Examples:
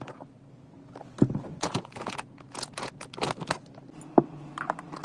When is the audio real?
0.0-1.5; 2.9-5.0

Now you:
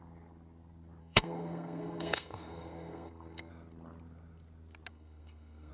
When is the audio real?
0.0-1.0; 3.5-4.9

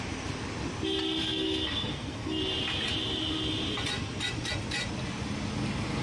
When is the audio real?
0.0-1.2; 2.4-6.0

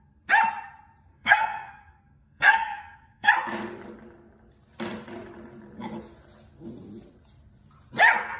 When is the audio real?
0.0-1.1; 3.3-8.4